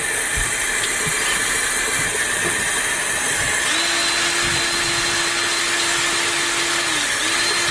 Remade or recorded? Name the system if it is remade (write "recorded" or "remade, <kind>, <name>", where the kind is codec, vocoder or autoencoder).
recorded